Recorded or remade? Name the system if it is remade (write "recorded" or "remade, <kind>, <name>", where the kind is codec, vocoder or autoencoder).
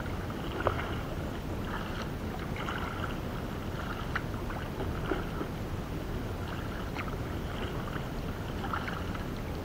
recorded